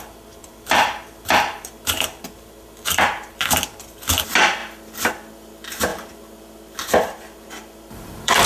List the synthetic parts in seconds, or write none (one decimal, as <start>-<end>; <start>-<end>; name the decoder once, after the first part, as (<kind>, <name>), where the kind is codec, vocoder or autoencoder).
0.4-2.2 (vocoder, BigVGAN v2); 5.9-8.5